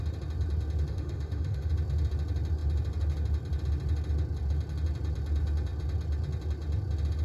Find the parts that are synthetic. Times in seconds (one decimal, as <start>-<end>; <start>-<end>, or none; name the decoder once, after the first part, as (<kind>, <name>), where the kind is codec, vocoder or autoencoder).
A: 0.9-1.7 (autoencoder, DAC-VAE)

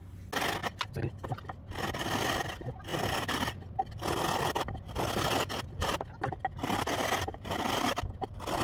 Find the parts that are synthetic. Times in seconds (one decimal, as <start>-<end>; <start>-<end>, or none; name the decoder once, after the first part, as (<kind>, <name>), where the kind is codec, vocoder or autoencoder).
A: none

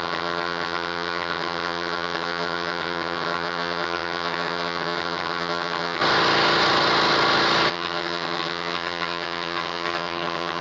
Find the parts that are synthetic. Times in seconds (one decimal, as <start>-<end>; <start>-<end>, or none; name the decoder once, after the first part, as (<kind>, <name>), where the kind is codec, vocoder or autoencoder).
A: 0.0-6.0 (vocoder, HiFi-GAN); 7.7-10.6

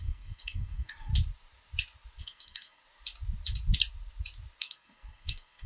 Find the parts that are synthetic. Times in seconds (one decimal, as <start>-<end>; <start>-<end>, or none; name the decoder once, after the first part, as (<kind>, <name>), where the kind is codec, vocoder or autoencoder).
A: 0.0-1.1 (codec, SNAC); 2.2-2.8; 4.6-5.7

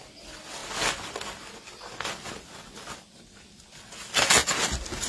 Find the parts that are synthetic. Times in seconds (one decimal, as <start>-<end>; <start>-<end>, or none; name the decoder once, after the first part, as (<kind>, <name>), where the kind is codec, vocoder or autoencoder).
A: none

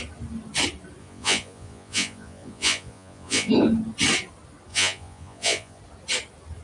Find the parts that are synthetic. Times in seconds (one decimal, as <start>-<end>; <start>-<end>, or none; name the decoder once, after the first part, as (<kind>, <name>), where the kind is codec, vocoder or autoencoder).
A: 1.0-3.5 (vocoder, Vocos); 4.7-5.8

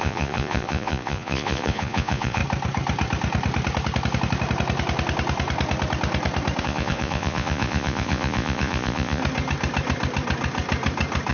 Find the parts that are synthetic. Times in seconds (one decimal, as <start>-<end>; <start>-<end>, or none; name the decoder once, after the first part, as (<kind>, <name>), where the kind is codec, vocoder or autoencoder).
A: 0.0-2.4 (vocoder, Vocos); 6.6-9.2

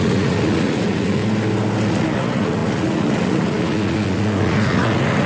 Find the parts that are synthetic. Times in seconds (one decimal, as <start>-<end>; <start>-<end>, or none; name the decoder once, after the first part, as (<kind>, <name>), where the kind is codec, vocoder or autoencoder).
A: 0.0-1.2 (vocoder, Vocos); 1.9-5.3